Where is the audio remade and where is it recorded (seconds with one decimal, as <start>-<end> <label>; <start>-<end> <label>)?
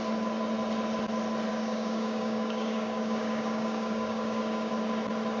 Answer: 0.0-1.5 recorded; 1.5-4.7 remade; 4.7-5.4 recorded